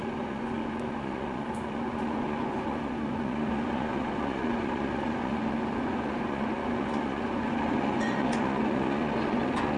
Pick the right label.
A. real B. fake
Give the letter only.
B